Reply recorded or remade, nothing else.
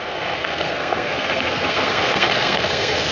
remade